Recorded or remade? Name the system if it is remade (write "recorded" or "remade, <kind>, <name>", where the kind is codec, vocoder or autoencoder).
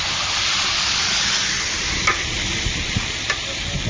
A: recorded